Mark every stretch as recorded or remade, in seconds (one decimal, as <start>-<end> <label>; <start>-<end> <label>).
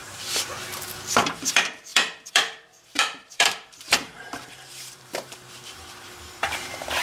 0.0-0.5 remade; 0.5-1.1 recorded; 1.1-7.0 remade